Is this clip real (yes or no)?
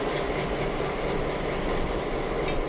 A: yes